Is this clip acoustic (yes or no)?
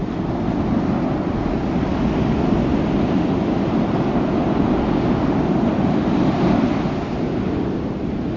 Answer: yes